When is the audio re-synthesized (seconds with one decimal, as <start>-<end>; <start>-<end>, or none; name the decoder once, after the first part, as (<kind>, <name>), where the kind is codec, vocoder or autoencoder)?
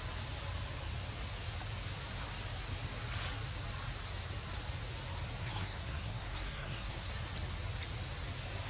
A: 5.4-7.1 (codec, SNAC)